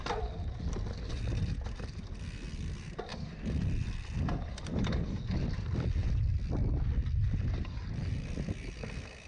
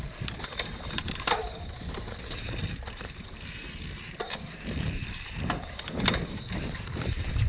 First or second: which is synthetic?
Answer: second